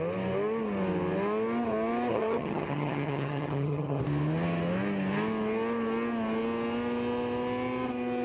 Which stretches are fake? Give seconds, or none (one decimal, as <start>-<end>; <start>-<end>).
2.1-4.0

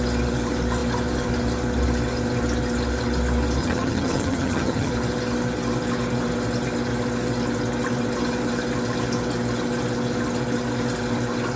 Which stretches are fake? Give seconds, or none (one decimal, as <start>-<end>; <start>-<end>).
3.6-4.9

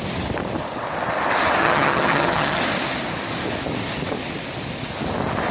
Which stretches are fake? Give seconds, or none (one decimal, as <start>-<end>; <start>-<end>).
1.6-2.6